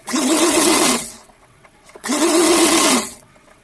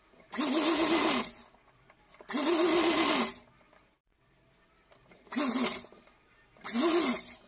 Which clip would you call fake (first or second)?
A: first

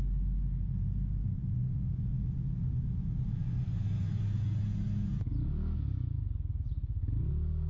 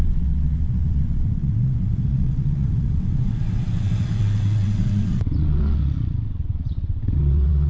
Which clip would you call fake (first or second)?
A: second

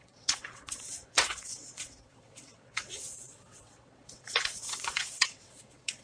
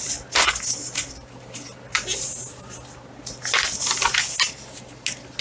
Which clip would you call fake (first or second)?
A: first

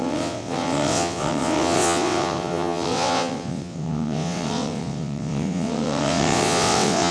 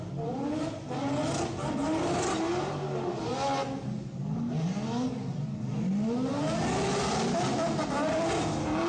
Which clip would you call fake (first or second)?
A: first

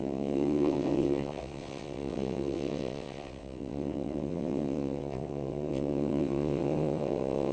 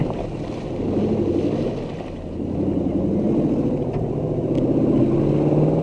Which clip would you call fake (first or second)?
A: first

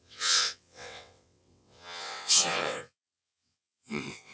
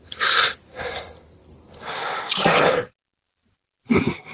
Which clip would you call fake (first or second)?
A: first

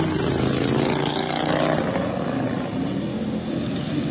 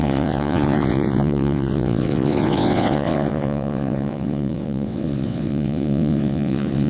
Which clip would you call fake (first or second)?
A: second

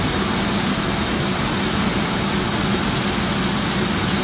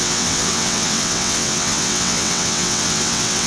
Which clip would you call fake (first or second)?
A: second